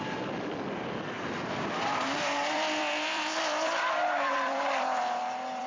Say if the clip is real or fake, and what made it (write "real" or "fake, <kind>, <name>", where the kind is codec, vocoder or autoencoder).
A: fake, vocoder, BigVGAN v2